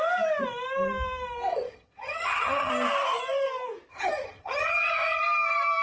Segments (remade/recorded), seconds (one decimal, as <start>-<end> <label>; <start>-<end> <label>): 0.0-1.5 recorded; 1.5-2.7 remade; 2.7-3.9 recorded; 3.9-5.2 remade; 5.2-5.8 recorded